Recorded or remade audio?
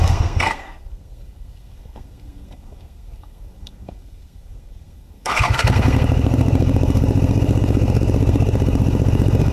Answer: remade